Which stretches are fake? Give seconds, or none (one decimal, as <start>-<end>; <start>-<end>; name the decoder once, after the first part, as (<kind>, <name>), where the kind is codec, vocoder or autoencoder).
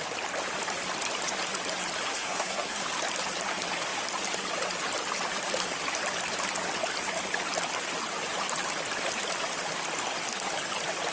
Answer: 2.1-2.8 (codec, SNAC)